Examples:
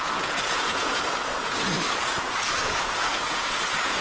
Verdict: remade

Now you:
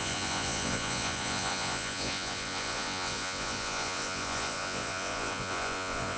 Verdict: remade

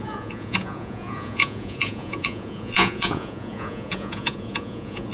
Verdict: remade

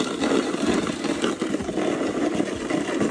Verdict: recorded